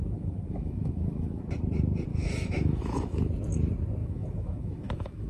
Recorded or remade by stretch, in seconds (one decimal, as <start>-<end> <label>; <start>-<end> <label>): 0.0-1.4 remade; 1.4-2.1 recorded; 2.1-3.3 remade; 3.3-4.0 recorded; 4.0-5.3 remade